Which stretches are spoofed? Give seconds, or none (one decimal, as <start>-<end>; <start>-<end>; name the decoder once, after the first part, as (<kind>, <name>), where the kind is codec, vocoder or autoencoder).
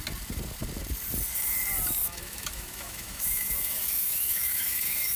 2.0-5.2 (autoencoder, DAC-VAE)